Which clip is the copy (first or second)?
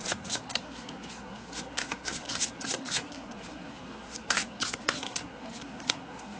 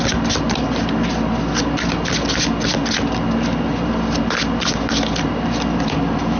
first